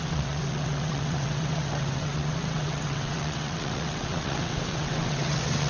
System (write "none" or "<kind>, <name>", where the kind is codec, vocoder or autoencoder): vocoder, WaveNeXt